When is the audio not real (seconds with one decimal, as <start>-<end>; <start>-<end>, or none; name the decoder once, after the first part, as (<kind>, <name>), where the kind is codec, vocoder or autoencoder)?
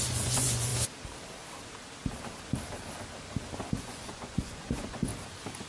0.0-0.7 (vocoder, Vocos); 3.8-5.1